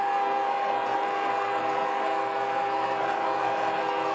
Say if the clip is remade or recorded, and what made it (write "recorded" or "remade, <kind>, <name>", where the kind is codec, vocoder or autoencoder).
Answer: remade, codec, SNAC